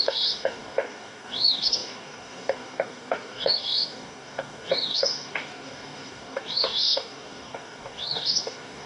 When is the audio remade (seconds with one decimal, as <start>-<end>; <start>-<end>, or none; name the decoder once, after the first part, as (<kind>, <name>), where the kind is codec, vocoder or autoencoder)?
0.0-8.9 (codec, DAC)